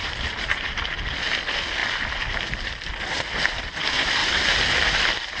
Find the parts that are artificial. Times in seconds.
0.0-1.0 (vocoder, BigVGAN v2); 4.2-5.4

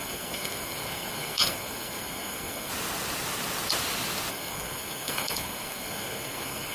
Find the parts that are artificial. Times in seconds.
0.0-2.7 (codec, SNAC); 4.3-6.7

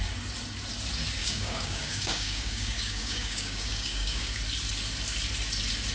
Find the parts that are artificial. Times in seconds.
1.2-4.4 (codec, DAC)